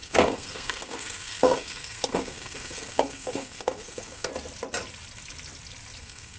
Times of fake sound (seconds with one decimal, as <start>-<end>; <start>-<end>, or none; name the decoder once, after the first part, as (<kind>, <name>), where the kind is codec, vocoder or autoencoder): 0.0-4.3 (codec, SNAC); 6.0-6.4